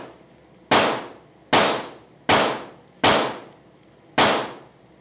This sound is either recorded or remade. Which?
recorded